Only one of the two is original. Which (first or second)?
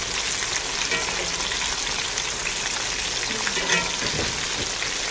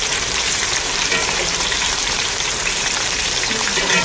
first